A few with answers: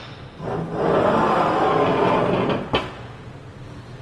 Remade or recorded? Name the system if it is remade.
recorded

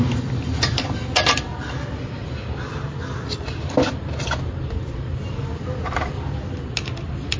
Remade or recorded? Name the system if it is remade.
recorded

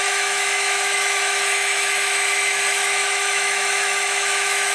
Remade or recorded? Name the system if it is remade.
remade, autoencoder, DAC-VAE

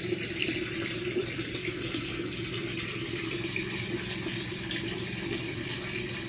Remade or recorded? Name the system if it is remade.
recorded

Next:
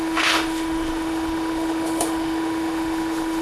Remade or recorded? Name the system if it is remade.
remade, autoencoder, DAC-VAE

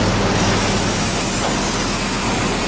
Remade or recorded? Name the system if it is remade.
recorded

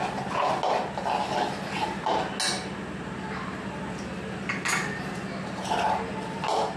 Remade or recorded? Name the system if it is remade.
recorded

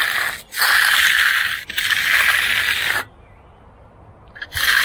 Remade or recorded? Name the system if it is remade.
recorded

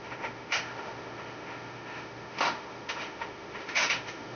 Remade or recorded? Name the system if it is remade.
remade, autoencoder, DAC-VAE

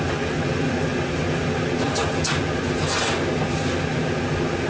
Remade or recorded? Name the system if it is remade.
recorded